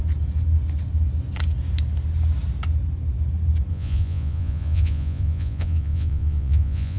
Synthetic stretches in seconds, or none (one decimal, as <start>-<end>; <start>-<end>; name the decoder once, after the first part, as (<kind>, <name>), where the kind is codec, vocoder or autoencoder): 3.7-7.0 (vocoder, Vocos)